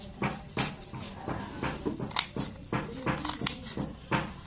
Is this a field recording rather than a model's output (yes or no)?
yes